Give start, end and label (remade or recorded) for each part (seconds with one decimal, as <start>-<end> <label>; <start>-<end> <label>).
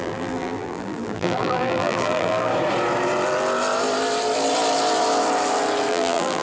0.0-2.5 remade; 2.5-5.9 recorded; 5.9-6.4 remade